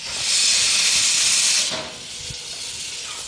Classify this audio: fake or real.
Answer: real